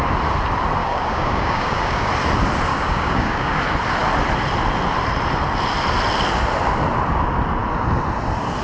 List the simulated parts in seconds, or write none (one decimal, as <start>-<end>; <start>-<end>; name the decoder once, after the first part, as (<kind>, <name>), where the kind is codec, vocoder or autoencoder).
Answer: 0.8-2.1 (codec, DAC); 2.7-3.6